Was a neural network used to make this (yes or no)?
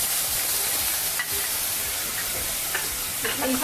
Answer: no